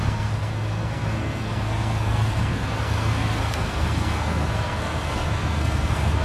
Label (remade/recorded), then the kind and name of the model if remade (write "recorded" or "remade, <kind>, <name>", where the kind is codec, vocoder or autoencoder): remade, codec, SNAC